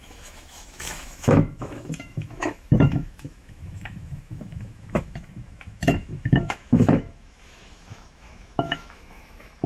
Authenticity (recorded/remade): remade